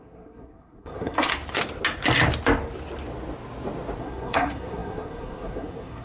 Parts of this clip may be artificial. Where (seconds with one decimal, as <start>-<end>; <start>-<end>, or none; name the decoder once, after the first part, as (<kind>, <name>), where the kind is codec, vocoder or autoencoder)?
0.0-1.3 (codec, SNAC); 4.0-6.0